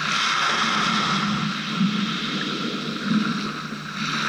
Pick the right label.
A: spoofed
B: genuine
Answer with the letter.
B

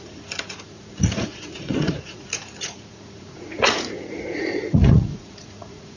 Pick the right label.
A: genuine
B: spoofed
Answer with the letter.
B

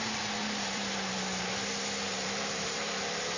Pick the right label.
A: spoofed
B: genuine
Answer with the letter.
A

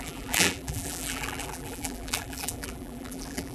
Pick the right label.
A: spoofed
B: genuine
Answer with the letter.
A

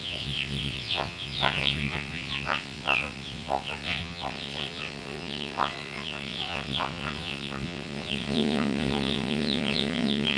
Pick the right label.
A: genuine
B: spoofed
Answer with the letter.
B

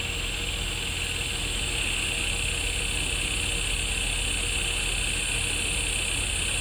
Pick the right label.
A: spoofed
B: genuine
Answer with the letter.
B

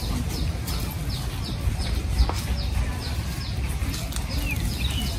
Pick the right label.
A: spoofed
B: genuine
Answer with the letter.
B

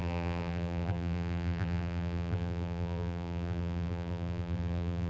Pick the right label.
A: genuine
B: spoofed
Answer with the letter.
B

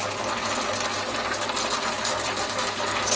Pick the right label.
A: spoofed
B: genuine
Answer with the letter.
B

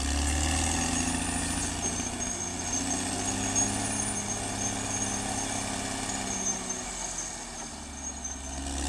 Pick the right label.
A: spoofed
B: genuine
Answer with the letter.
B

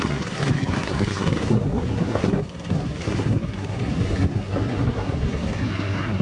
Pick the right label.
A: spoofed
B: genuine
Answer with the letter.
A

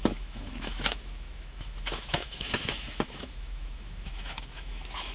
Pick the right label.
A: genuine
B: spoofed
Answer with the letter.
B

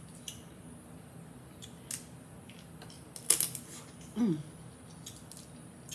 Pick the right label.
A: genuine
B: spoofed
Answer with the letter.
A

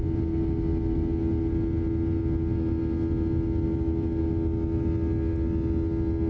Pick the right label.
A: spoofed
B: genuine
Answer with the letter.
B